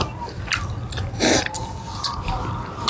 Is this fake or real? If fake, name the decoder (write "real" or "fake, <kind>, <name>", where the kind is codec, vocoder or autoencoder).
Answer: real